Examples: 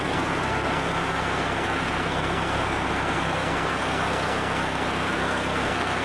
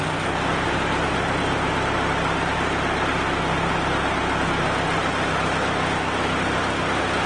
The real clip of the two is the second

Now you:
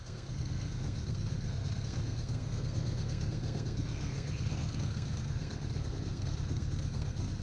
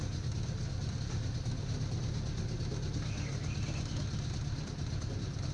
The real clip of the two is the second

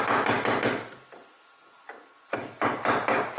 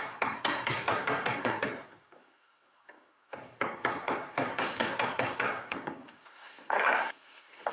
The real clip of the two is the first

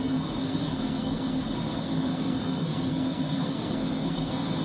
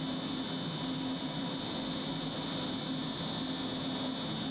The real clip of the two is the second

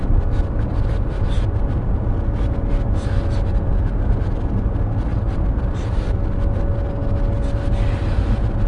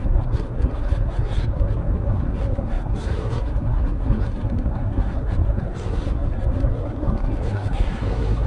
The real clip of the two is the first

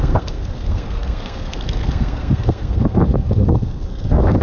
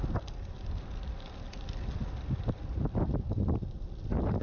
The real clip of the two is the second